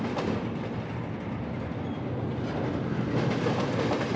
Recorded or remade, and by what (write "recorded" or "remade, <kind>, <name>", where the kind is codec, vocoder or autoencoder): recorded